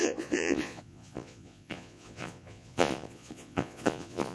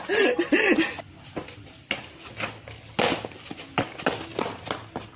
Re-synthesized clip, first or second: first